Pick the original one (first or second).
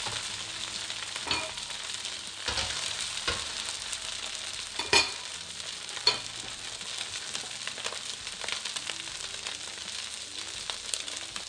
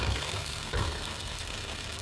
first